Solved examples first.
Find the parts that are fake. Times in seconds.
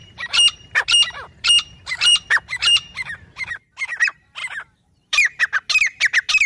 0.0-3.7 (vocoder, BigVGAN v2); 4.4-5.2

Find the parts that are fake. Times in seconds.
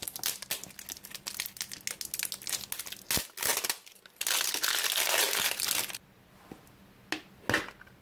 none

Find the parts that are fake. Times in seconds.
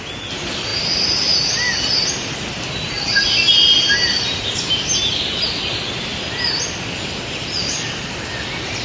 6.1-8.1 (vocoder, BigVGAN v2)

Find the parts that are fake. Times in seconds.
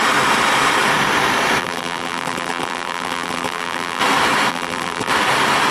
1.6-4.0 (vocoder, BigVGAN v2); 4.5-5.1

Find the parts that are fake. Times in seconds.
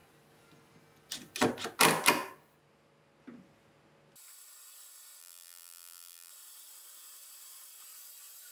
5.2-6.3 (vocoder, BigVGAN v2)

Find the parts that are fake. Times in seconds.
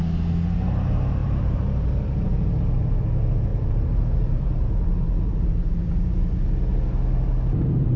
1.2-2.5 (vocoder, BigVGAN v2); 3.5-5.9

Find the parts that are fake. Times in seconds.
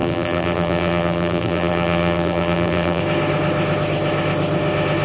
0.0-3.0 (vocoder, BigVGAN v2)